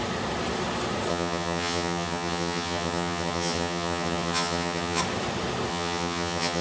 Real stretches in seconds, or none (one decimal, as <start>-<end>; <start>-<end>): 0.0-1.1; 5.0-5.7